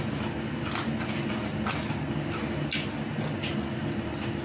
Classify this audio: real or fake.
real